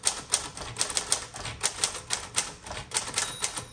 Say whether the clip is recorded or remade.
recorded